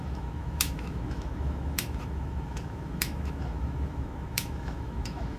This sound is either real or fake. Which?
fake